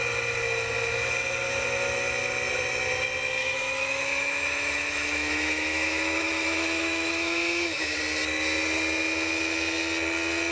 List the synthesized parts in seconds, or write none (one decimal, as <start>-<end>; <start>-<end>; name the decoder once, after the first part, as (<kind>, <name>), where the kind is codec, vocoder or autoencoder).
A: 3.4-8.0 (autoencoder, DAC-VAE)